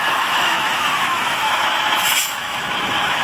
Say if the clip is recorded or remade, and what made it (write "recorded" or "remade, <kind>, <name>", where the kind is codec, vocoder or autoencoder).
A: remade, autoencoder, DAC-VAE